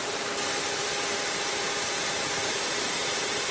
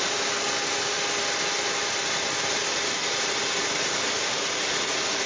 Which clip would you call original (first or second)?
second